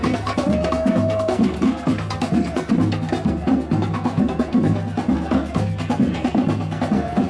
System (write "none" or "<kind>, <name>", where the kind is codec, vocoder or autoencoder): codec, SNAC